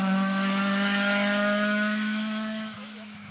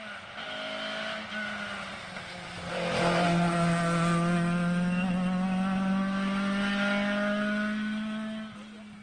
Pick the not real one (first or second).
first